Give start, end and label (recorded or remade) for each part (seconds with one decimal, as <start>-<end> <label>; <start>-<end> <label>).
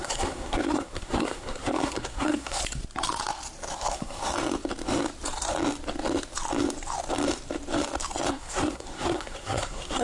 0.0-2.6 remade; 2.6-3.7 recorded; 3.7-4.3 remade; 4.3-8.3 recorded; 8.3-10.0 remade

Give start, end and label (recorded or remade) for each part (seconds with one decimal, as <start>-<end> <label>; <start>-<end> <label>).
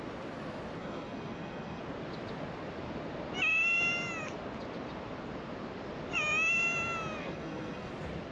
0.0-0.8 recorded; 0.8-1.8 remade; 1.8-7.2 recorded; 7.2-7.9 remade; 7.9-8.3 recorded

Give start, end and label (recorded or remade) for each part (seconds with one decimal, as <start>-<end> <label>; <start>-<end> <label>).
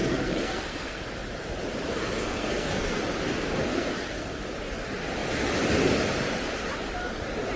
0.0-1.0 remade; 1.0-1.9 recorded; 1.9-3.0 remade; 3.0-3.7 recorded; 3.7-4.4 remade; 4.4-7.6 recorded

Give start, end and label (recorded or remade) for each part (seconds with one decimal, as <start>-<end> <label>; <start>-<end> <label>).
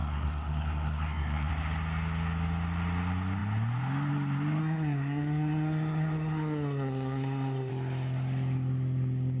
0.0-1.5 remade; 1.5-4.6 recorded; 4.6-7.7 remade; 7.7-9.4 recorded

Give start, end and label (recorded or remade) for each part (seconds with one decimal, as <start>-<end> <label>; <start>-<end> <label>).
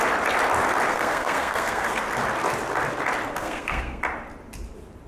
0.0-0.9 recorded; 0.9-2.0 remade; 2.0-3.4 recorded; 3.4-4.0 remade; 4.0-5.1 recorded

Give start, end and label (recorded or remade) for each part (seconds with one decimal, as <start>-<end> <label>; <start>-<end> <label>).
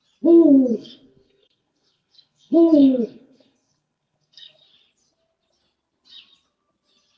0.0-0.7 recorded; 0.7-4.6 remade; 4.6-7.2 recorded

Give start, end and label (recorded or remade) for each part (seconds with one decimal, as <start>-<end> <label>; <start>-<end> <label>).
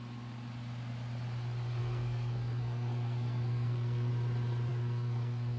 0.0-1.8 recorded; 1.8-4.1 remade; 4.1-4.7 recorded; 4.7-5.6 remade